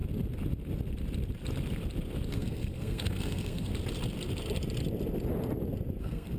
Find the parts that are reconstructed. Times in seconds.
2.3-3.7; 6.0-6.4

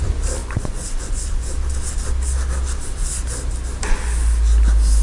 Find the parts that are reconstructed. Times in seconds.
0.4-1.5